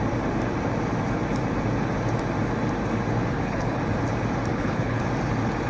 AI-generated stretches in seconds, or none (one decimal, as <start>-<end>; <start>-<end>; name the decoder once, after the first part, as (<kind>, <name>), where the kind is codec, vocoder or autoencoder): 3.3-3.8 (codec, HILCodec); 4.5-5.0